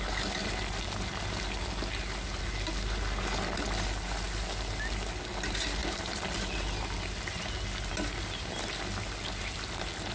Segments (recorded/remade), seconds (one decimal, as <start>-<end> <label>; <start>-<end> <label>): 0.0-10.1 recorded